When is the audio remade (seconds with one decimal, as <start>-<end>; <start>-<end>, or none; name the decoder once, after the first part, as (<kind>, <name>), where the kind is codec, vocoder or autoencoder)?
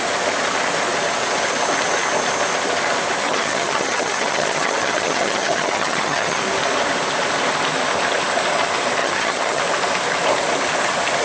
3.2-6.4 (vocoder, HiFi-GAN); 9.0-9.6